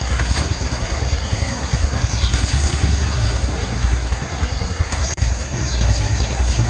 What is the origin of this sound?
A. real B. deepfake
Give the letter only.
B